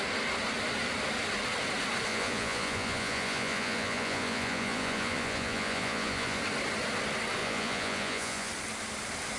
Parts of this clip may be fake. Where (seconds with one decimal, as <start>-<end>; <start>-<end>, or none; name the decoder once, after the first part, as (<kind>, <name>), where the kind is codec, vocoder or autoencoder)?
2.1-6.4 (vocoder, Vocos); 7.4-8.5